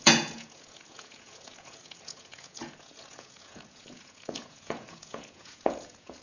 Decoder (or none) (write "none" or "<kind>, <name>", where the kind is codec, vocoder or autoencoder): vocoder, Vocos